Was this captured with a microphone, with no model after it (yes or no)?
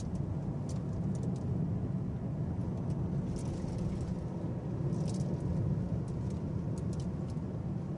yes